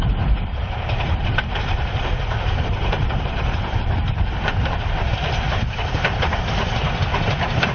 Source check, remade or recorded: remade